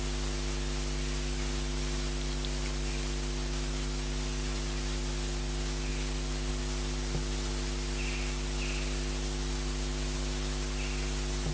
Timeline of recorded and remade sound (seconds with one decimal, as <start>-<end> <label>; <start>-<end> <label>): 0.0-11.5 recorded